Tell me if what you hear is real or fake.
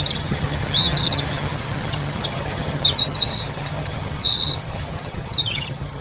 fake